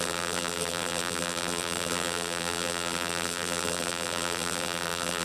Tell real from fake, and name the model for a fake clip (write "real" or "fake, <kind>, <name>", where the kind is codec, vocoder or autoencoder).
fake, vocoder, BigVGAN v2